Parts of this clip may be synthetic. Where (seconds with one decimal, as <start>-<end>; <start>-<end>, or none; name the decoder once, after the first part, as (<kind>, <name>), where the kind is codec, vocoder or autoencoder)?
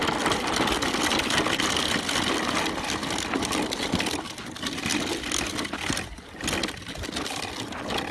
none